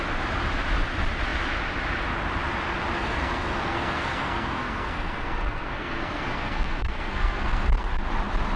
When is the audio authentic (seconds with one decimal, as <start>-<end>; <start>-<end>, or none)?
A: 0.0-3.0; 7.9-8.6